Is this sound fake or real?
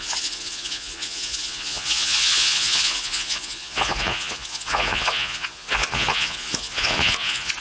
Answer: fake